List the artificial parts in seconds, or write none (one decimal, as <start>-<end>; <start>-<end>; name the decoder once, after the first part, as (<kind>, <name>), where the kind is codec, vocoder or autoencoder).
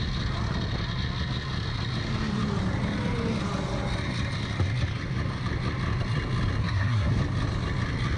6.6-7.1 (codec, SNAC)